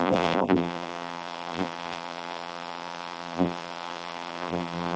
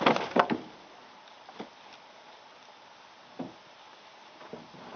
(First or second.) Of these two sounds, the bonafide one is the second